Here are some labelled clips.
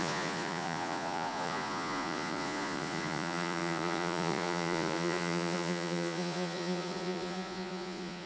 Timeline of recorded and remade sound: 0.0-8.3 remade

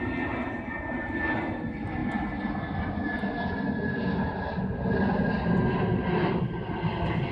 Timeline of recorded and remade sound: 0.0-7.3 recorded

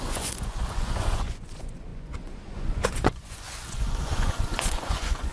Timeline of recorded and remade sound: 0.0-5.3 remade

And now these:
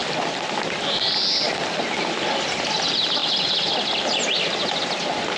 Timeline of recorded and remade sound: 0.0-5.4 recorded

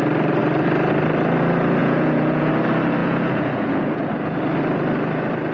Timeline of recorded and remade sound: 0.0-1.8 recorded; 1.8-2.5 remade; 2.5-3.0 recorded; 3.0-4.1 remade; 4.1-5.5 recorded